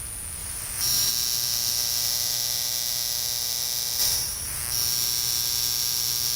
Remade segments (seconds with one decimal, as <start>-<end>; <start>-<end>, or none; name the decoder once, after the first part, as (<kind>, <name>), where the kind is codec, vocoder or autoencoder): 0.4-1.1 (vocoder, BigVGAN v2); 4.0-4.6